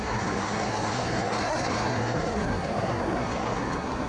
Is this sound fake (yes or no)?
yes